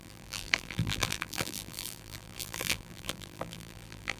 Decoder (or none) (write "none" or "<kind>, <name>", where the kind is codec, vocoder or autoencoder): vocoder, BigVGAN v2